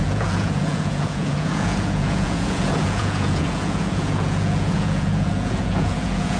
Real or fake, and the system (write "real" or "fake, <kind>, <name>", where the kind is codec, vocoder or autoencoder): fake, vocoder, Vocos